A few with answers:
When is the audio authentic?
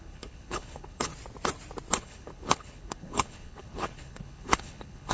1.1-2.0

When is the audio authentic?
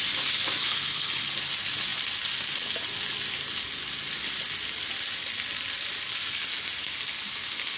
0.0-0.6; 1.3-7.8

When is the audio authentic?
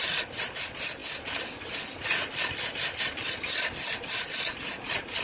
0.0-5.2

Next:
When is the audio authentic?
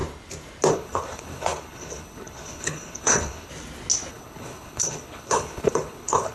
0.0-0.7; 3.5-4.1